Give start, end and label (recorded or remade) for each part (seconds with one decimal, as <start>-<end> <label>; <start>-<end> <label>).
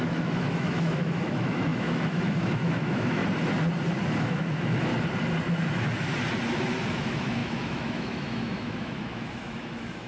0.0-3.2 remade; 3.2-4.2 recorded; 4.2-4.9 remade; 4.9-6.9 recorded; 6.9-10.1 remade